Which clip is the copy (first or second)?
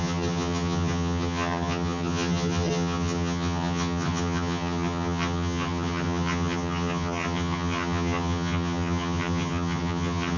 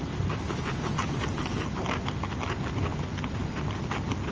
first